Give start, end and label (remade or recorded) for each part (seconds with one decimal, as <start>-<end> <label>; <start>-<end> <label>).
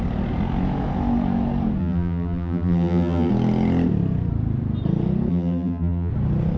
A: 0.0-1.8 recorded; 1.8-3.3 remade; 3.3-5.3 recorded; 5.3-6.1 remade; 6.1-6.6 recorded